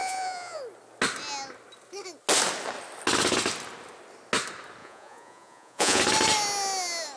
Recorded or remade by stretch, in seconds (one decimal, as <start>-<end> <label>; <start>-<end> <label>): 0.0-0.6 remade; 0.6-4.8 recorded; 4.8-6.0 remade; 6.0-7.2 recorded